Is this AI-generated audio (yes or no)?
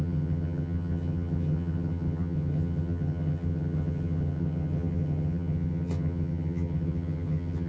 yes